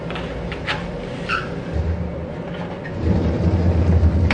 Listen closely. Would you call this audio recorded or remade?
recorded